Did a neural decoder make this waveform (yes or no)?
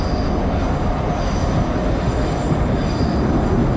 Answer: no